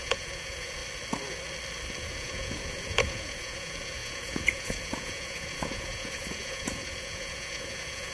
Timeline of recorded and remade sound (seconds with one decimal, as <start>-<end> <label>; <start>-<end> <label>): 0.0-0.8 remade; 0.8-2.0 recorded; 2.0-8.1 remade